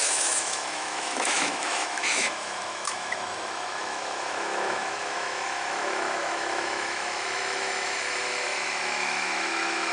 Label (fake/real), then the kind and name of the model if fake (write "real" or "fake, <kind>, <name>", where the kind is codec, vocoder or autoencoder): fake, autoencoder, DAC-VAE